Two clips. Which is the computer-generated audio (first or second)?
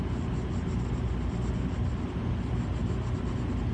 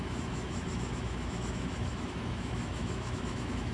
second